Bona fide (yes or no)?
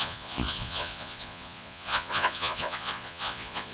no